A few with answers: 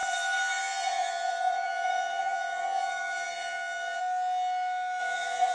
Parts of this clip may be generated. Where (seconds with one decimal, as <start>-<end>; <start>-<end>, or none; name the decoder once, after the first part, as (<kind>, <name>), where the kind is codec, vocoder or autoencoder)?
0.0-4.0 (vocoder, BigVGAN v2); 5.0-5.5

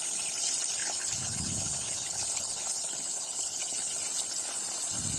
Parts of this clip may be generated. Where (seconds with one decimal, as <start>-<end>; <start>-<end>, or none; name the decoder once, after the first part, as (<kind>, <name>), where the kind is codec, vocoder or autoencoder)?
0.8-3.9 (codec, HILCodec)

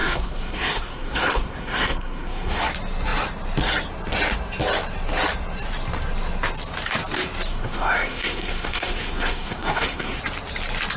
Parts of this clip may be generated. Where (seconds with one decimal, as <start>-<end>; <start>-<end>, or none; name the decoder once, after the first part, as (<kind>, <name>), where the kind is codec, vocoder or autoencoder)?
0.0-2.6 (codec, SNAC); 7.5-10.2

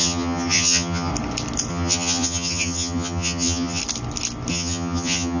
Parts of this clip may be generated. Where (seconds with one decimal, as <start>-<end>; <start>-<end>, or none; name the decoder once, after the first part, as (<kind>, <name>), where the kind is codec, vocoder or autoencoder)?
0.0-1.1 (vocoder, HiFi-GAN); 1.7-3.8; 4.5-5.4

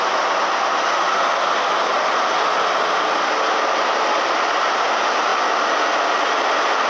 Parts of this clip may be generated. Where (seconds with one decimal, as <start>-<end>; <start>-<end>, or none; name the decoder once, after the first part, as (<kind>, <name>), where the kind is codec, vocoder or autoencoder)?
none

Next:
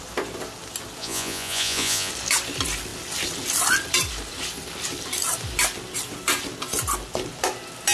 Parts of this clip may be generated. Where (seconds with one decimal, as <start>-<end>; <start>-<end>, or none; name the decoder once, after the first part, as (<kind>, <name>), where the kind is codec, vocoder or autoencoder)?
1.0-2.1 (vocoder, Vocos)

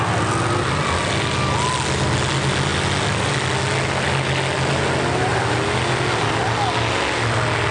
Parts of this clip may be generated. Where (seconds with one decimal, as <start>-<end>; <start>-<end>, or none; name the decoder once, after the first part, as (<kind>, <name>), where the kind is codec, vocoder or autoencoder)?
none

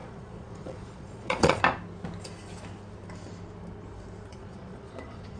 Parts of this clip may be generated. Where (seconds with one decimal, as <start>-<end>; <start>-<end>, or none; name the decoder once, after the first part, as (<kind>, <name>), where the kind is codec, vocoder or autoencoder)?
0.0-1.6 (vocoder, Vocos); 4.3-5.4